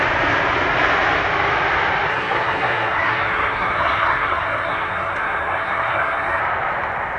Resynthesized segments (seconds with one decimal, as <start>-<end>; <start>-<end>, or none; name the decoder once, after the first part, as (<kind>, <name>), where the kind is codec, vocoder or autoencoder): 2.1-6.4 (codec, SNAC)